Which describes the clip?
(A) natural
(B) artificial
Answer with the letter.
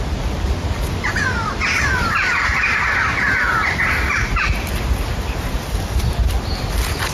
A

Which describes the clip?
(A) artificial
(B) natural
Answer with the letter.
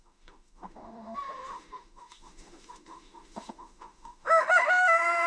A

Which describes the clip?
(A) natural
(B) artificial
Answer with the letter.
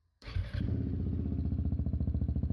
A